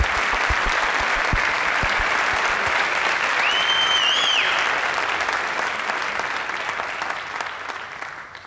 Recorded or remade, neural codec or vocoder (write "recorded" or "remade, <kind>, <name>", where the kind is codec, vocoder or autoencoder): recorded